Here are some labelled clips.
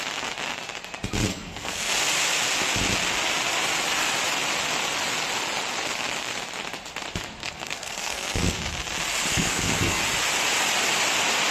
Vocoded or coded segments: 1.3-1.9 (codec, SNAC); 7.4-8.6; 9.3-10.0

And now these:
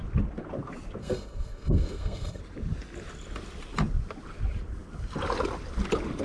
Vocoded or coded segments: 1.0-2.4 (codec, SNAC)

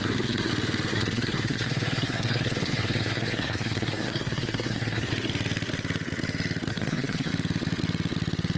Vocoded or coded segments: 0.0-0.5 (codec, SNAC); 0.9-5.1; 6.7-7.3

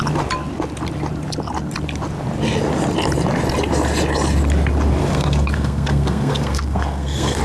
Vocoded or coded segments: 5.0-7.4 (codec, SNAC)